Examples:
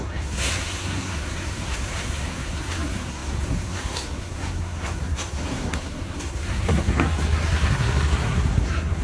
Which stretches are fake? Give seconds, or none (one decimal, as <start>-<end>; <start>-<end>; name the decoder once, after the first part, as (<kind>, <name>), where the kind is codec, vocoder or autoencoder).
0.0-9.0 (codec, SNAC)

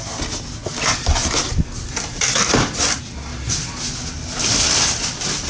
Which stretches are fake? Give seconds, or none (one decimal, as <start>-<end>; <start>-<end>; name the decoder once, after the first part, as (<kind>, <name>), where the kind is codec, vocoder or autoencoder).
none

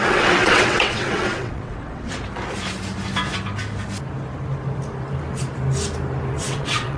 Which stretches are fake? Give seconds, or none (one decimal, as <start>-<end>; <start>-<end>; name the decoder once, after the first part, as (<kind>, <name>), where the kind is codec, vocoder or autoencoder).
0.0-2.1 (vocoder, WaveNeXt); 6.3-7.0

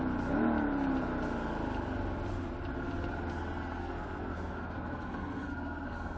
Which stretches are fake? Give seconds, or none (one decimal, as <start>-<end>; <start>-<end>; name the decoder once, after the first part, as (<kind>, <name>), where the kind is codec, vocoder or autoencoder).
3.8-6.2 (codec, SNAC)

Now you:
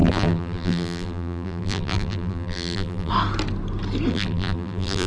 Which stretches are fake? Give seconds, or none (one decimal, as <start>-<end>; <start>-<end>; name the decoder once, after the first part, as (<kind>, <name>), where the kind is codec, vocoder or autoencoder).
0.0-3.1 (vocoder, BigVGAN v2); 4.1-5.1

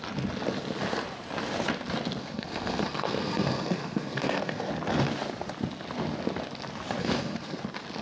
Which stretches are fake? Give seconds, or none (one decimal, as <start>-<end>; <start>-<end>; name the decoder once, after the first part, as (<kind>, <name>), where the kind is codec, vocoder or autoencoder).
2.2-4.7 (codec, SNAC); 7.0-7.6

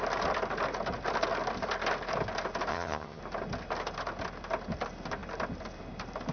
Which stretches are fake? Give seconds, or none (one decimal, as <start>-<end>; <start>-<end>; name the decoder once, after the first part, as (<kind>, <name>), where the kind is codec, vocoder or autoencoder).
2.7-3.2 (vocoder, HiFi-GAN)

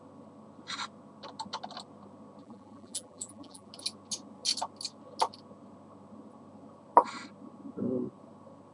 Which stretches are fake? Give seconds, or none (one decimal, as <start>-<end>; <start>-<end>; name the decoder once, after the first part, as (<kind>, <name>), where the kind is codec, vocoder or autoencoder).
2.4-3.7 (vocoder, BigVGAN v2)